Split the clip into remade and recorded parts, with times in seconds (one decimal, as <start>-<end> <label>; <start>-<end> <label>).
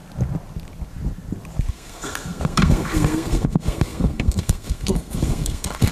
0.0-1.7 recorded; 1.7-5.9 remade